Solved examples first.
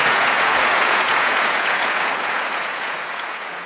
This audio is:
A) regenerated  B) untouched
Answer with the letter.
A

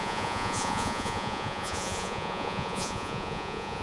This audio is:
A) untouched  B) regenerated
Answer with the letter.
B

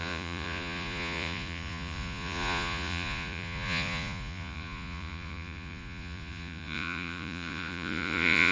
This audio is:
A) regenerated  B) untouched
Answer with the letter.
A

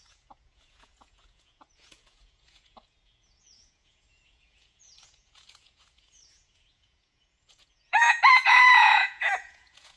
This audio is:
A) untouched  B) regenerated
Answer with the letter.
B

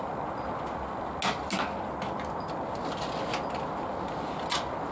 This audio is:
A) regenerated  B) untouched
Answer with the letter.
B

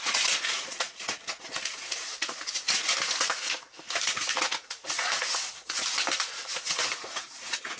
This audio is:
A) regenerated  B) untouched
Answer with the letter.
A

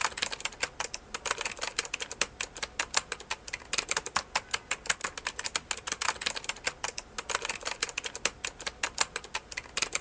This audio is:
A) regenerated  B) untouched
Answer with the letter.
B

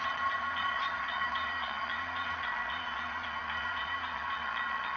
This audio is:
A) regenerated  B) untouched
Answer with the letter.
A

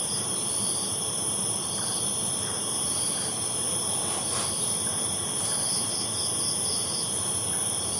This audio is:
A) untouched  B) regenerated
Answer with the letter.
A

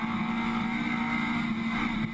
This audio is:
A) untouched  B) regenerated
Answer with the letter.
A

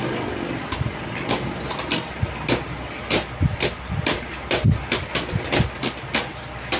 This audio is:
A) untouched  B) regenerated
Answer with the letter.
A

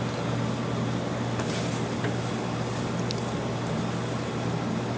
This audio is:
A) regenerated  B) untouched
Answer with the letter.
B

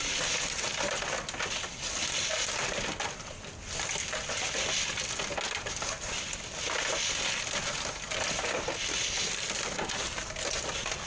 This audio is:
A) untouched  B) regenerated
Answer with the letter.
A